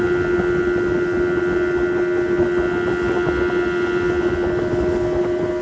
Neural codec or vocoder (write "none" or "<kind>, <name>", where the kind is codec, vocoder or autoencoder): none